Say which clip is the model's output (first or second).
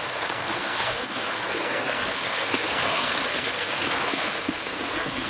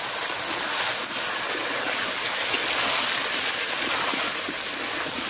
first